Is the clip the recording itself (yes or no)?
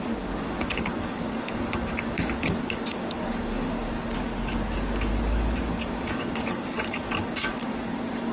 no